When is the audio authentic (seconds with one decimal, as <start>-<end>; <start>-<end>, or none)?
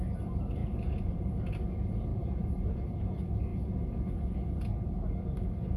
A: 0.0-0.6; 1.7-2.1; 3.0-5.8